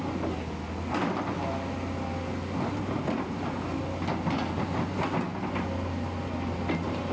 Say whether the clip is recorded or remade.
recorded